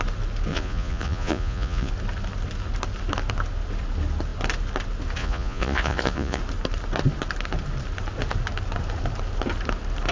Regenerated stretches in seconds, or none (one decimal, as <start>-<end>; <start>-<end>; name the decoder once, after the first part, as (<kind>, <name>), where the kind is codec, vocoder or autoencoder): 0.5-1.9 (vocoder, Vocos); 5.2-6.4